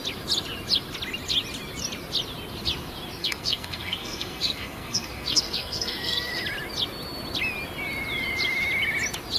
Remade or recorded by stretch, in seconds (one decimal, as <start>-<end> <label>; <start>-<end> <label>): 0.0-3.2 recorded; 3.2-6.3 remade; 6.3-9.4 recorded